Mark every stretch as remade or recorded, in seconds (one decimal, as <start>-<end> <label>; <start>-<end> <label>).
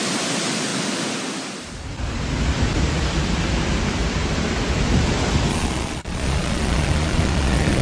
0.0-5.5 recorded; 5.5-7.8 remade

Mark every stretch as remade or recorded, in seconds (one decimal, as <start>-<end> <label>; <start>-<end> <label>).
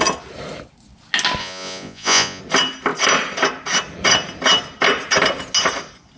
0.0-1.4 recorded; 1.4-2.4 remade; 2.4-6.2 recorded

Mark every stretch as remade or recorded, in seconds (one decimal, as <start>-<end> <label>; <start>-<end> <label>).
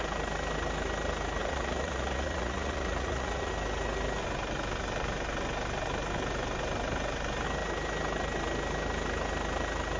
0.0-1.4 recorded; 1.4-3.5 remade; 3.5-10.0 recorded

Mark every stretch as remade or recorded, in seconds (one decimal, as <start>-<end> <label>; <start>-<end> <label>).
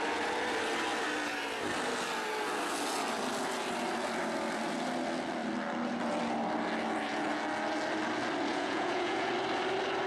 0.0-8.5 recorded; 8.5-9.3 remade; 9.3-10.1 recorded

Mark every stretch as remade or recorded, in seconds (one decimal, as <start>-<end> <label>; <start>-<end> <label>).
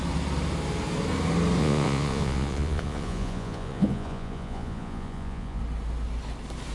0.0-1.6 recorded; 1.6-5.6 remade; 5.6-6.7 recorded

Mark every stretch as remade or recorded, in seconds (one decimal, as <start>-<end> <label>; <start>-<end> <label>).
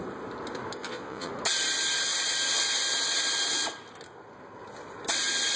0.0-0.8 recorded; 0.8-1.3 remade; 1.3-5.6 recorded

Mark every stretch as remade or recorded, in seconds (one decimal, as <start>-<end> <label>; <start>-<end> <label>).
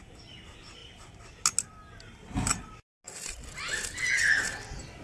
0.0-5.0 recorded